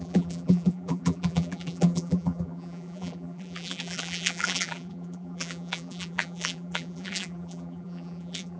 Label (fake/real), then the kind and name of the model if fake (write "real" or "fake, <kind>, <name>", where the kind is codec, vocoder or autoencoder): fake, vocoder, BigVGAN v2